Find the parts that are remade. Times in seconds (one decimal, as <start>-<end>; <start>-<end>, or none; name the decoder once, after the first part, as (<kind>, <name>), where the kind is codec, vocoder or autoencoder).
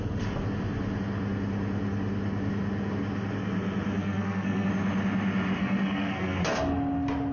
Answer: 4.0-4.7 (codec, SNAC); 5.6-6.4